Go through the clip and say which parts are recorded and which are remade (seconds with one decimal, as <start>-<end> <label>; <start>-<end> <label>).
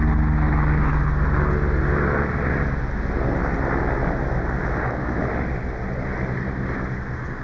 0.0-4.6 recorded; 4.6-5.2 remade; 5.2-7.4 recorded